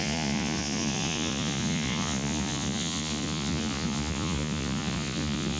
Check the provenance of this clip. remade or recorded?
remade